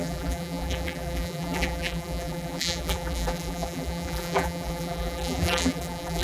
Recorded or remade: remade